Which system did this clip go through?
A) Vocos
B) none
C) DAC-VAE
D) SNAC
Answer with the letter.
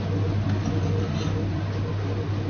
B